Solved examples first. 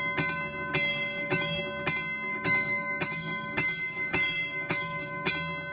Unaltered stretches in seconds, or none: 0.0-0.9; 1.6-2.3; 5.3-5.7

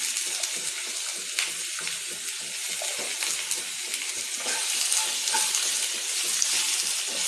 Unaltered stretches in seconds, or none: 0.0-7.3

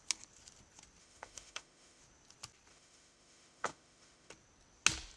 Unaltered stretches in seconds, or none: 0.0-1.0; 2.0-2.7; 4.3-5.2

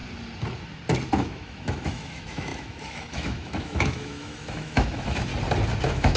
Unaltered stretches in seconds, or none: 0.0-1.1; 5.3-5.8

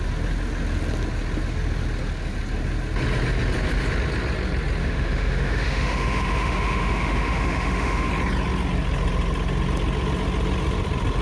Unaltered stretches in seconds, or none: 0.0-4.8; 8.1-11.2

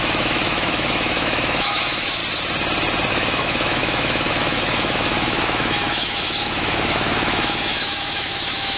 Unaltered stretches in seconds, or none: 2.2-3.1

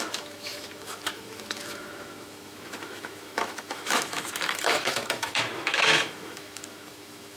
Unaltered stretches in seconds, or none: none